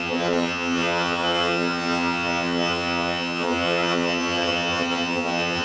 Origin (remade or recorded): remade